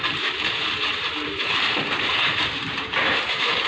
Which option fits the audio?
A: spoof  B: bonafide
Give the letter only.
A